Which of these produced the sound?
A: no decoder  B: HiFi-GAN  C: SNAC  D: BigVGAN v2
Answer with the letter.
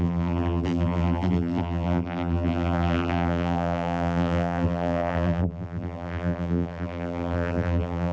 D